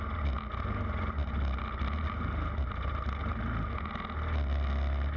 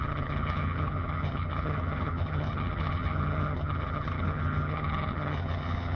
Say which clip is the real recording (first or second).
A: first